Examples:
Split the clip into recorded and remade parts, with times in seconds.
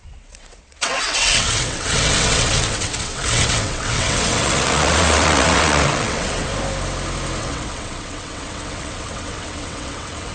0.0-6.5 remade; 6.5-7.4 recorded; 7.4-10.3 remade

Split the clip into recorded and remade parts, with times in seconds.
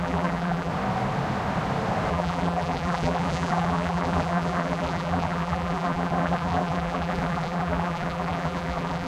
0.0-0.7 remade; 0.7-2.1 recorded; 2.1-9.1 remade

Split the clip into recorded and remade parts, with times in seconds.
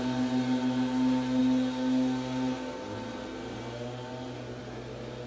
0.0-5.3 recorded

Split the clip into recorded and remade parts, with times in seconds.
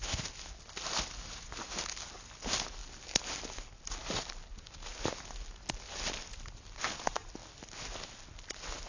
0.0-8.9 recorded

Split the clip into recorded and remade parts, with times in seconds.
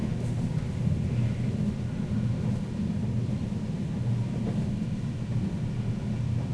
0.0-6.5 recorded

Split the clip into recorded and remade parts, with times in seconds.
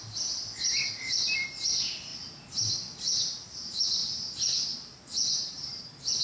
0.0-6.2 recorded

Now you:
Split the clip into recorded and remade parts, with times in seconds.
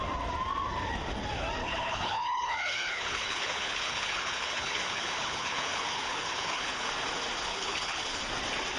0.0-1.6 recorded; 1.6-6.9 remade; 6.9-7.5 recorded; 7.5-8.2 remade; 8.2-8.8 recorded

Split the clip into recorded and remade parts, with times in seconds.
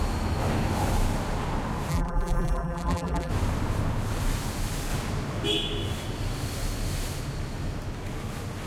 0.0-1.9 recorded; 1.9-3.3 remade; 3.3-8.7 recorded